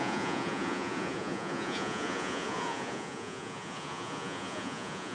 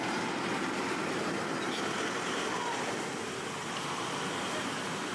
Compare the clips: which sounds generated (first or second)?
first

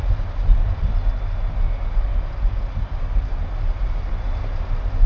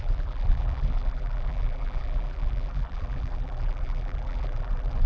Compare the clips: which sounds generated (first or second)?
second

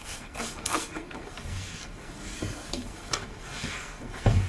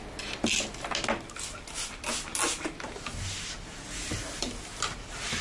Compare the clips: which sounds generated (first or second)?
first